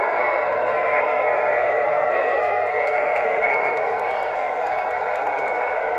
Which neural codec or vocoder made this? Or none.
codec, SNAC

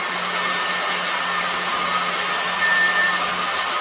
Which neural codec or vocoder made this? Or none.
none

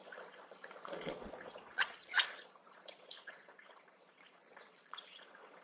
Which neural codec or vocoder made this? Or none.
vocoder, Vocos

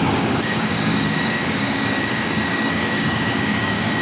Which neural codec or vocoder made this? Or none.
codec, DAC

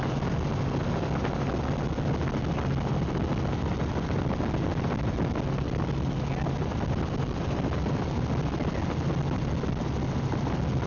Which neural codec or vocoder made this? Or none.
none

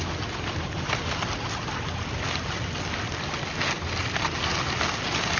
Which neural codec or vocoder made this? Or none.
none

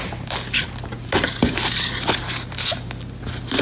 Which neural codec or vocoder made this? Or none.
none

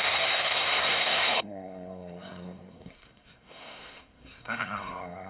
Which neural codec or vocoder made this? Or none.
codec, SNAC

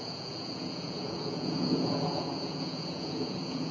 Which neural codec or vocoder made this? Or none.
vocoder, Vocos